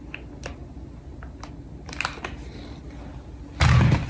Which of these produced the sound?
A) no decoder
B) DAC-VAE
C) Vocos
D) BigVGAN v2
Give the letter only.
A